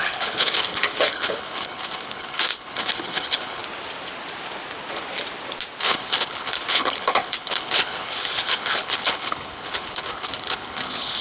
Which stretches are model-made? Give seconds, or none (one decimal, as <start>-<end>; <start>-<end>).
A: 0.0-3.6; 5.8-11.2